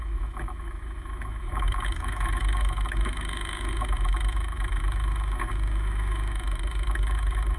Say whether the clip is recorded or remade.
remade